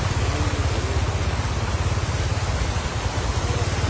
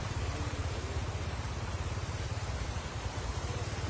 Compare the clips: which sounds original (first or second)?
first